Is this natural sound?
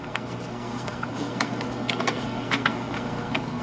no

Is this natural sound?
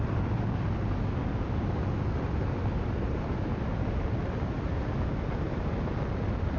yes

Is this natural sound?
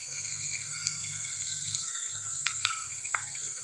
no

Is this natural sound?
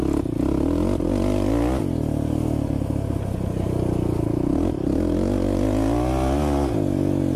yes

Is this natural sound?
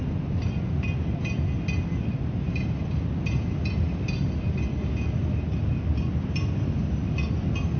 yes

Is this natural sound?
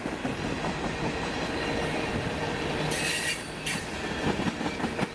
yes